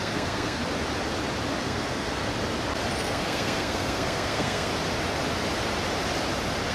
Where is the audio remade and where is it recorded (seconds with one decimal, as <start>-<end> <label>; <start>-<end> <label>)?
0.0-0.6 remade; 0.6-1.6 recorded; 1.6-2.3 remade; 2.3-3.0 recorded; 3.0-4.7 remade; 4.7-6.7 recorded